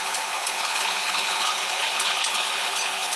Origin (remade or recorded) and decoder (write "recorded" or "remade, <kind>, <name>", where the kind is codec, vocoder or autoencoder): remade, codec, HILCodec